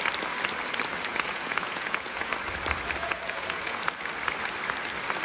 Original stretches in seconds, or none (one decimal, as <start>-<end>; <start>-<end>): 0.0-1.1; 2.3-3.0; 3.8-5.2